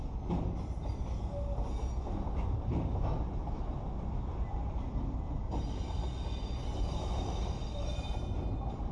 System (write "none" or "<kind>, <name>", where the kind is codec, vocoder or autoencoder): none